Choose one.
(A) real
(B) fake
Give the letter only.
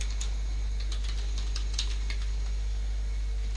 A